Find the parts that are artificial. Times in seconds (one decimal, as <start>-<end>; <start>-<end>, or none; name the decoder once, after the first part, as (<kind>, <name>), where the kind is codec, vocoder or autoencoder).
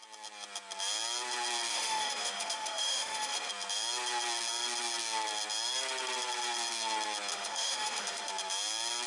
1.7-3.5 (autoencoder, DAC-VAE); 7.3-8.3